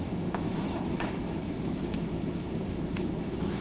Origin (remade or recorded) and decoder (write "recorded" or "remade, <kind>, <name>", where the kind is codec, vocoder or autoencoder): remade, autoencoder, DAC-VAE